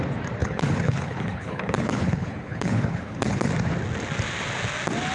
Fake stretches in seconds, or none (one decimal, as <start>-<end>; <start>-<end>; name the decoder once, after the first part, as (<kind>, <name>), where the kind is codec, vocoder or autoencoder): 0.4-3.5 (codec, HILCodec)